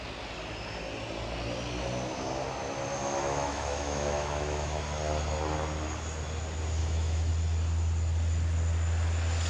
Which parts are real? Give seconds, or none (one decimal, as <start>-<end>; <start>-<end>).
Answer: 0.0-3.0; 4.8-6.8; 7.3-9.5